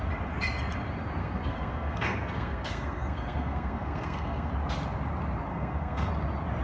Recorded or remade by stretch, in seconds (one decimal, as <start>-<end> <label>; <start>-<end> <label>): 0.0-1.2 recorded; 1.2-4.5 remade; 4.5-5.5 recorded; 5.5-6.1 remade; 6.1-6.6 recorded